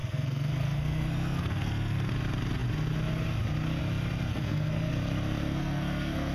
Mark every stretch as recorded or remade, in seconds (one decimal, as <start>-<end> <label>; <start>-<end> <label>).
0.0-2.1 remade; 2.1-4.3 recorded; 4.3-4.9 remade; 4.9-5.4 recorded; 5.4-6.3 remade